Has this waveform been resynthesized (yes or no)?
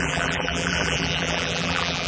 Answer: yes